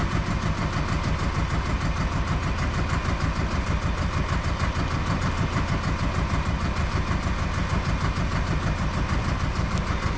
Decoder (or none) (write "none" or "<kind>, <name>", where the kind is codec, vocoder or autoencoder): none